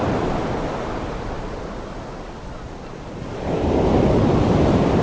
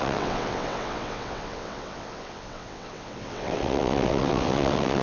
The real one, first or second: first